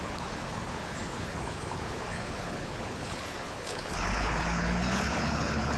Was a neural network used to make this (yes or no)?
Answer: yes